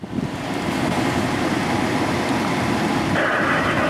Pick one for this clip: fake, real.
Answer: real